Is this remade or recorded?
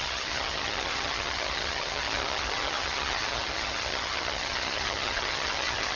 remade